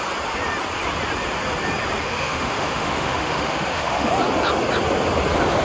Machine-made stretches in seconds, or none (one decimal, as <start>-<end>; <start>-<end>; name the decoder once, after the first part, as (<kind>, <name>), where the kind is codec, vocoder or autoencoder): 2.0-4.1 (autoencoder, DAC-VAE)